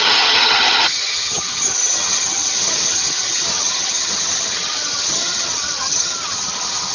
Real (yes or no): no